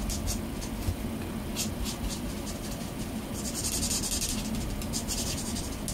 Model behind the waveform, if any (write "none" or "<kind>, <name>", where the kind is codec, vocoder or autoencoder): none